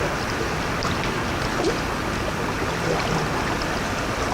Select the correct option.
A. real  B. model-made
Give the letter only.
A